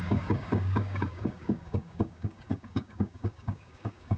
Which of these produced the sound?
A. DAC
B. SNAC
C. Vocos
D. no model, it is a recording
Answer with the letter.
A